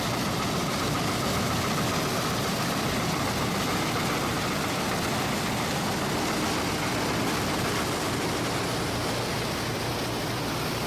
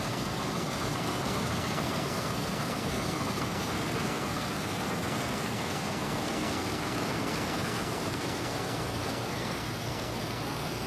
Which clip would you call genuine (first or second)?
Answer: first